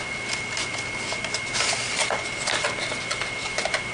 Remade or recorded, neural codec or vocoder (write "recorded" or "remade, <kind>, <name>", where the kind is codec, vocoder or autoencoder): remade, vocoder, BigVGAN v2